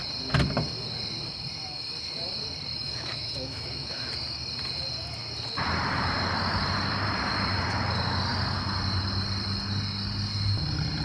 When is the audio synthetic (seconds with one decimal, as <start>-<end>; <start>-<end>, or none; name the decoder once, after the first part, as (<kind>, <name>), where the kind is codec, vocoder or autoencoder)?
2.7-4.1 (autoencoder, DAC-VAE)